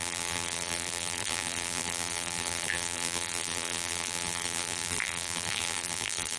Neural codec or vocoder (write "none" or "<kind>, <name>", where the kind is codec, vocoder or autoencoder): vocoder, BigVGAN v2